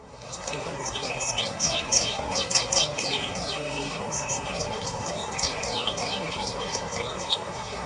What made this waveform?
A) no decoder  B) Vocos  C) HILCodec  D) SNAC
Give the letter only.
D